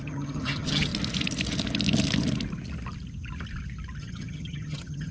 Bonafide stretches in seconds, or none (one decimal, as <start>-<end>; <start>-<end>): 0.9-4.0